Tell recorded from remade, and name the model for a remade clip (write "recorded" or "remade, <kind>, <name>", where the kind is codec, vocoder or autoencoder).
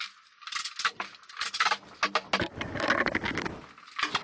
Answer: recorded